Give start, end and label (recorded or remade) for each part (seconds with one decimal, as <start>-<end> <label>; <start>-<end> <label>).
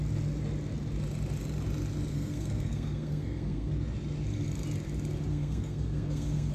0.0-2.1 recorded; 2.1-3.7 remade; 3.7-5.3 recorded; 5.3-6.5 remade